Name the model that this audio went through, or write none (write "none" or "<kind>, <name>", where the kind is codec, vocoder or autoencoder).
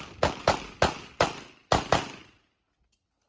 none